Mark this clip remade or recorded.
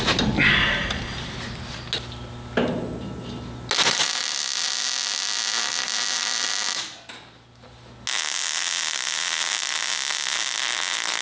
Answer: recorded